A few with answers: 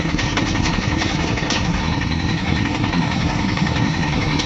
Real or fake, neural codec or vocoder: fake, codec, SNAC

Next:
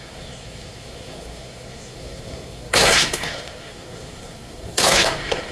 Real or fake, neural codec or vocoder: fake, codec, SNAC